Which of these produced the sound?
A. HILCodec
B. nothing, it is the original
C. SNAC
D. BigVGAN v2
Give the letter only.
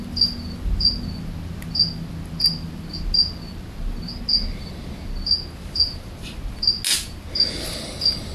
B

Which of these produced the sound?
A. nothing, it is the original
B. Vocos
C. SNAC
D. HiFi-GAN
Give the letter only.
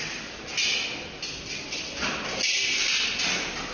A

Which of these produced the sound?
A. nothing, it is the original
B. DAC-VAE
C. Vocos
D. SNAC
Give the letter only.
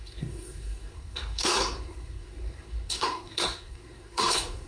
D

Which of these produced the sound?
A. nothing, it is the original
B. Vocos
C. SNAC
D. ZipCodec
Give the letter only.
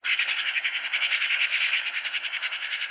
C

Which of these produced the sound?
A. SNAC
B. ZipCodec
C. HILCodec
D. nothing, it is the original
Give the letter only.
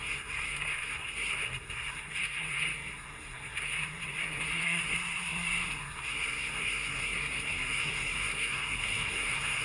A